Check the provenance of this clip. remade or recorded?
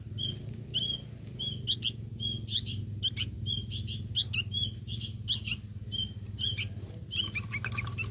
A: recorded